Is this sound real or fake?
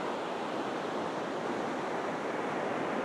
real